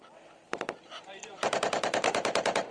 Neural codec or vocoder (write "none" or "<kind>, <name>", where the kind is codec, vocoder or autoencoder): vocoder, BigVGAN v2